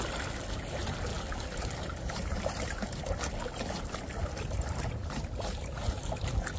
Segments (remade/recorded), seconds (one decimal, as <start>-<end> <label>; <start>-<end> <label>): 0.0-1.1 recorded; 1.1-3.8 remade; 3.8-5.0 recorded; 5.0-6.0 remade; 6.0-6.6 recorded